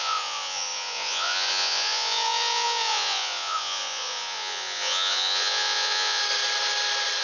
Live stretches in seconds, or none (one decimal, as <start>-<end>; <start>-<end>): 6.2-7.2